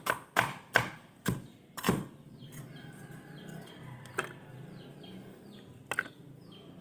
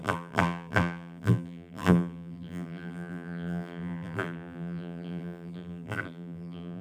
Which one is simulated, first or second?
second